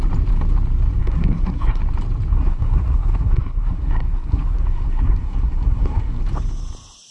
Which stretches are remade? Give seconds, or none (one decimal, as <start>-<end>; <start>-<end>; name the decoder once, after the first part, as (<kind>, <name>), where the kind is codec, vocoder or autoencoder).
1.0-1.8 (codec, SNAC); 2.3-6.2

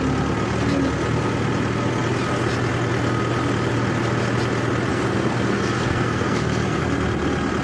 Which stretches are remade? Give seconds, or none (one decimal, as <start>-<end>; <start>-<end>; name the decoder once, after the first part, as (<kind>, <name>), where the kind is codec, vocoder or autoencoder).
4.9-6.8 (codec, SNAC)

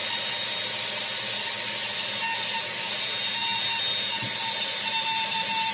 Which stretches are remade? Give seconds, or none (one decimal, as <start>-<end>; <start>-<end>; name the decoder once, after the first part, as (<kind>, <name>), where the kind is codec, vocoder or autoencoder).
none